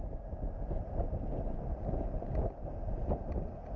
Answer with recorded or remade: recorded